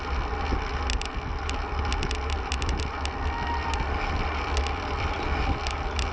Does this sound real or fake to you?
real